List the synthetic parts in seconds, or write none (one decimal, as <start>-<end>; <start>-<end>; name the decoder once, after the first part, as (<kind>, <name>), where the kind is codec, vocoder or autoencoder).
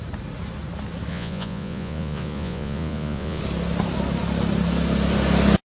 1.1-3.4 (vocoder, Vocos)